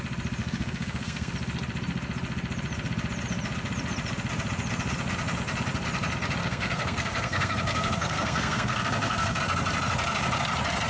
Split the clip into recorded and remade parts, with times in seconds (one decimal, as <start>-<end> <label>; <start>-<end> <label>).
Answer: 0.0-0.4 recorded; 0.4-1.3 remade; 1.3-6.4 recorded; 6.4-9.4 remade; 9.4-10.9 recorded